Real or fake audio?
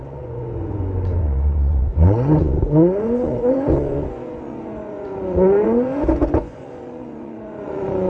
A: fake